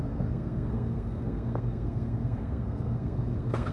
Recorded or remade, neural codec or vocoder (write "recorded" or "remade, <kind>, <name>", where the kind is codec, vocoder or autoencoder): remade, codec, SNAC